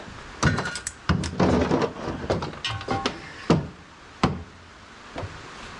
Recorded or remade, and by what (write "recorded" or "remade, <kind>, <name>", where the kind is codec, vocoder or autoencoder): recorded